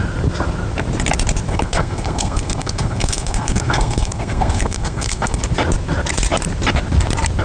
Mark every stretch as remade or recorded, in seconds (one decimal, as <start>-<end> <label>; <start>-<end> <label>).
0.0-1.5 recorded; 1.5-5.4 remade; 5.4-7.4 recorded